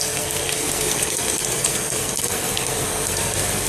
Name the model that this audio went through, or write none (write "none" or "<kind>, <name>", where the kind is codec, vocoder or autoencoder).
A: codec, SNAC